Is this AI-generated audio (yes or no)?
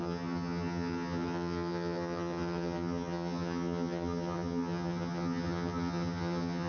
yes